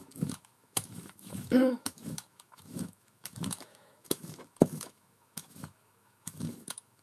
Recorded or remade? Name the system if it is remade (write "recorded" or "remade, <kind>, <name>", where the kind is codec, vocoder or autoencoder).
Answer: remade, autoencoder, DAC-VAE